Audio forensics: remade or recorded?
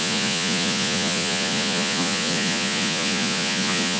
remade